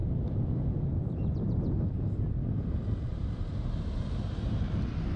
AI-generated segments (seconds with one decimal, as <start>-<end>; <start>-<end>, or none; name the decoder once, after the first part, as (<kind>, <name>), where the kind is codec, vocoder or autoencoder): none

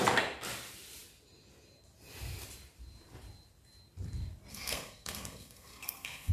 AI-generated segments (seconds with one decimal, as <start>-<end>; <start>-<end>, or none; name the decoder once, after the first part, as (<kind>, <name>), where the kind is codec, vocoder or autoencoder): 4.5-6.3 (codec, SNAC)

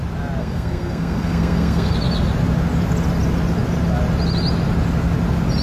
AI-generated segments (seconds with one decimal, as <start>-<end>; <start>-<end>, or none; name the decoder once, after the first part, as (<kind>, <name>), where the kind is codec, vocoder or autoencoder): 0.4-1.9 (codec, SNAC)

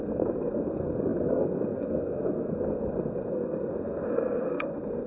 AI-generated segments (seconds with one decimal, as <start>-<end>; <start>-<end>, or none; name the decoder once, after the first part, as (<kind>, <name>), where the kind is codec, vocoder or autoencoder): 0.0-5.1 (codec, SNAC)

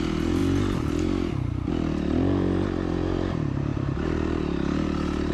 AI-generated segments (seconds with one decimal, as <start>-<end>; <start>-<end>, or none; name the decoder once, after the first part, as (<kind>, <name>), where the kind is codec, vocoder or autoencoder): 3.7-5.3 (vocoder, BigVGAN v2)

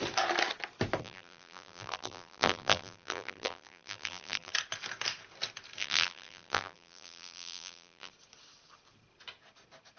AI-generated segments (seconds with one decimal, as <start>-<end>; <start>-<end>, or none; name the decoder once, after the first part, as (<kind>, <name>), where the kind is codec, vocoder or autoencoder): 1.0-4.5 (vocoder, BigVGAN v2); 5.8-8.1

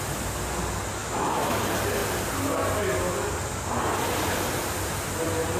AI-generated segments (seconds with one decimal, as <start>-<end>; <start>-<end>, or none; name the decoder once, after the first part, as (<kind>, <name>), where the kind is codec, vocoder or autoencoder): 1.0-1.6 (autoencoder, DAC-VAE)

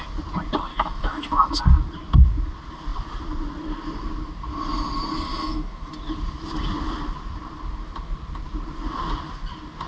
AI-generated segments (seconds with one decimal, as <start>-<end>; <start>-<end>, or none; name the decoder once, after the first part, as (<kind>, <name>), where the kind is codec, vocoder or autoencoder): 0.7-1.6 (autoencoder, DAC-VAE); 5.3-5.9